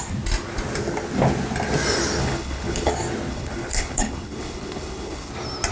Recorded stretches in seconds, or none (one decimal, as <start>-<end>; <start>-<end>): 0.0-2.2; 2.9-3.3; 5.3-5.7